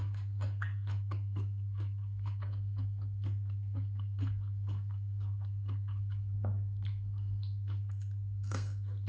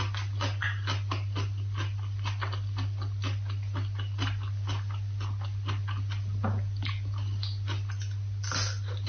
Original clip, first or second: second